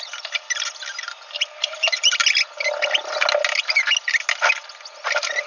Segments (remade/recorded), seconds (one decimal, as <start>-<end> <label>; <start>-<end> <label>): 0.0-2.2 remade; 2.2-5.5 recorded